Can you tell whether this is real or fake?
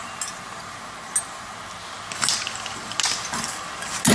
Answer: real